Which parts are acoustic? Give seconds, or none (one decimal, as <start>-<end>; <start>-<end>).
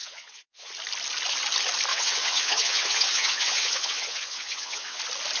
0.7-1.9; 5.0-5.4